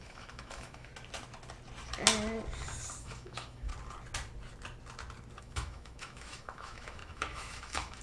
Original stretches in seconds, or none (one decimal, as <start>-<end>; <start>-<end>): 0.9-3.0; 3.7-5.4